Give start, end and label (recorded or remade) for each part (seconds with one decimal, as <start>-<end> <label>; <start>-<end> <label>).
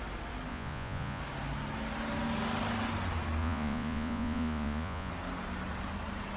0.0-0.5 recorded; 0.5-1.2 remade; 1.2-3.4 recorded; 3.4-5.1 remade; 5.1-6.4 recorded